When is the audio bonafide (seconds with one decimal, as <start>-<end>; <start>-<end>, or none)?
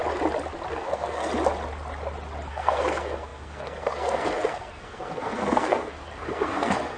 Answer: 0.0-0.7; 1.3-2.5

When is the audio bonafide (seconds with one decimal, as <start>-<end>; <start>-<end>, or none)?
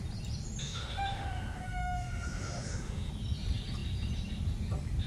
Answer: 0.0-0.6; 3.1-5.1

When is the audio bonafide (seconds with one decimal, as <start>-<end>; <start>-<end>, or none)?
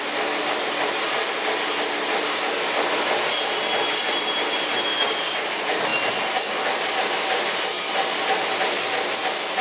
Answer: 0.0-9.6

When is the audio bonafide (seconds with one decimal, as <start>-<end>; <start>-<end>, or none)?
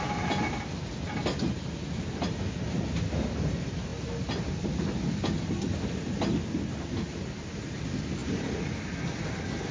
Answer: 0.0-9.7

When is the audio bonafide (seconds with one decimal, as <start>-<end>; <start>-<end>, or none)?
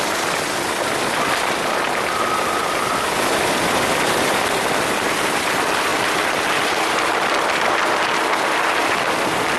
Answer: 0.0-9.6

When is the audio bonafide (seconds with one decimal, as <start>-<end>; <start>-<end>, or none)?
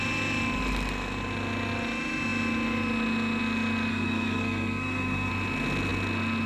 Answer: 0.0-3.9; 5.3-6.5